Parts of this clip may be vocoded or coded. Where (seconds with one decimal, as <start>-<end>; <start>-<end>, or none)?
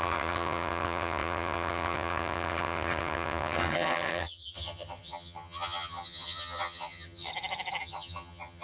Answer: 0.0-7.3; 7.8-8.6